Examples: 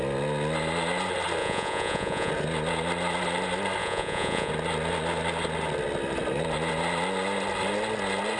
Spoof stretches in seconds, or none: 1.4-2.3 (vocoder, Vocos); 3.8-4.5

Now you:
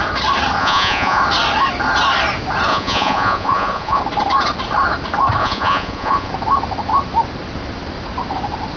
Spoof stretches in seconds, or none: 0.6-1.2 (vocoder, Vocos); 2.7-4.0; 5.4-6.3

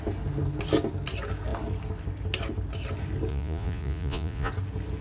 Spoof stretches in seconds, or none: 3.3-4.5 (vocoder, Vocos)

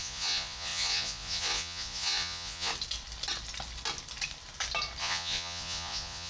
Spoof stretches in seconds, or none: 0.0-2.7 (vocoder, Vocos); 5.0-6.3

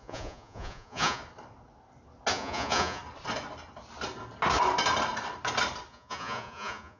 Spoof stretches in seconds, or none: 0.0-1.2 (vocoder, Vocos); 2.3-3.0; 5.9-7.0